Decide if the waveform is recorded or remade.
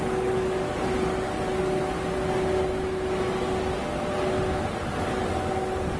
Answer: recorded